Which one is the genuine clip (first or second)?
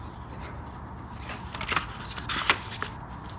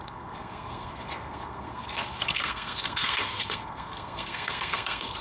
first